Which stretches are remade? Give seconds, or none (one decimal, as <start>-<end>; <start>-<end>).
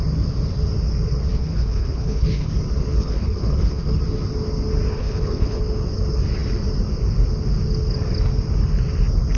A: 1.3-2.5; 3.0-4.0; 5.0-5.6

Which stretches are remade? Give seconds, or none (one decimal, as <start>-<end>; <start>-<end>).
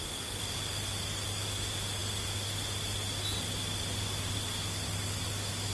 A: none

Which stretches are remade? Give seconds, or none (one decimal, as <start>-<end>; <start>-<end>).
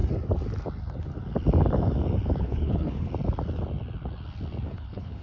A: 2.4-3.1; 4.7-5.2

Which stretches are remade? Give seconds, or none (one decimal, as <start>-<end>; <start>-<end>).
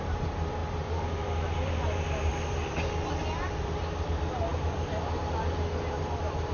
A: none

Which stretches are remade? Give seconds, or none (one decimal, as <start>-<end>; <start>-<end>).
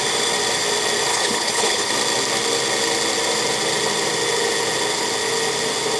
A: 1.1-1.9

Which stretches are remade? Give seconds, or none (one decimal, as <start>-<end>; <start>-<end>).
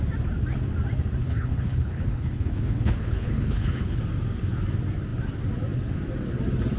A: 1.2-4.0